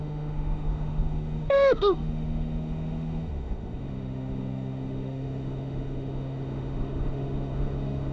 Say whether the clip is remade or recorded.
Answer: remade